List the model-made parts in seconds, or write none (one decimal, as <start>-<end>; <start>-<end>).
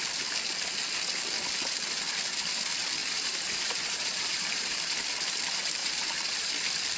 3.0-5.0; 5.8-6.5